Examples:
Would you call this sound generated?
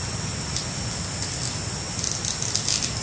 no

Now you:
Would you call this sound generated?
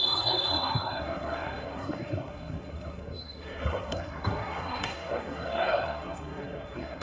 yes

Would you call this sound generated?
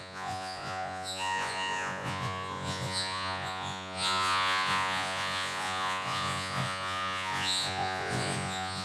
yes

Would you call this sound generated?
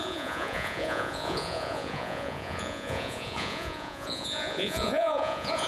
yes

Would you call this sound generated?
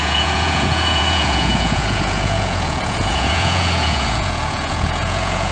yes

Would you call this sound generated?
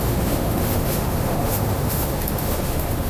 yes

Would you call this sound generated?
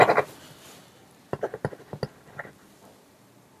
no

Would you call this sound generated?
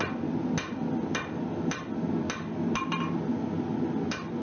no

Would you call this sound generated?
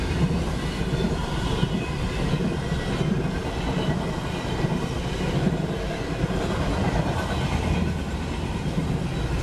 no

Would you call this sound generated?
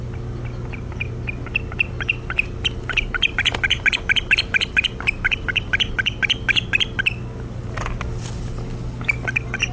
no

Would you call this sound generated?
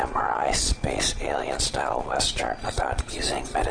yes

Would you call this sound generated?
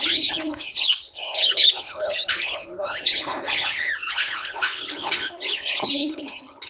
yes